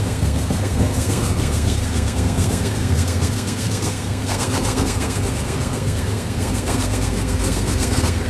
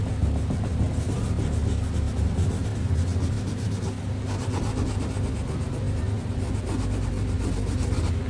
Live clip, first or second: second